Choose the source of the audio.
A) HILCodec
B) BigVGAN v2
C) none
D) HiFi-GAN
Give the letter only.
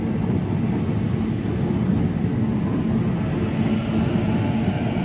C